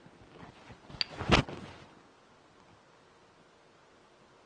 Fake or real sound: real